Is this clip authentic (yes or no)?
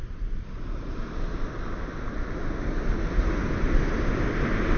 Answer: yes